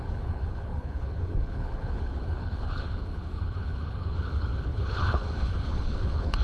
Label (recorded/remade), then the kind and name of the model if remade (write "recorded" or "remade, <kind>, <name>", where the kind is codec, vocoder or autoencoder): remade, codec, HILCodec